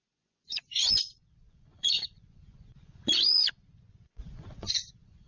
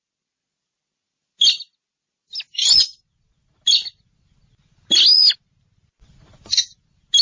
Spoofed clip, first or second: first